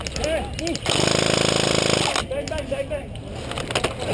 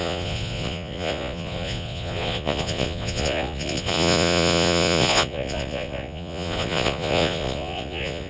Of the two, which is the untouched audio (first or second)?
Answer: first